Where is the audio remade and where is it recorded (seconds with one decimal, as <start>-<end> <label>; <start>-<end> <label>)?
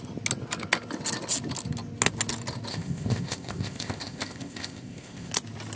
0.0-2.7 recorded; 2.7-5.3 remade; 5.3-5.8 recorded